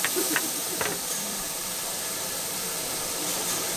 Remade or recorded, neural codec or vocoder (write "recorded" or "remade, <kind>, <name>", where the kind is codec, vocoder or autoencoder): remade, vocoder, BigVGAN v2